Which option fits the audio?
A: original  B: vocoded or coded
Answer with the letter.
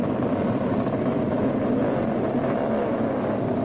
B